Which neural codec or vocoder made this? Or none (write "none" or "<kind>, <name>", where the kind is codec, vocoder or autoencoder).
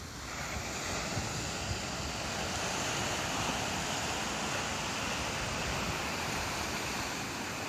none